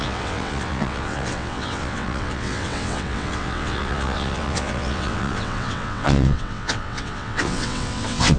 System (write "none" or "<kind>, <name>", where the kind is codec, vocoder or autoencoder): vocoder, WaveNeXt